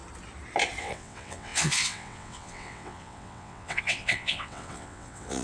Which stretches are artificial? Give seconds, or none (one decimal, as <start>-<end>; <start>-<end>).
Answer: 0.8-5.4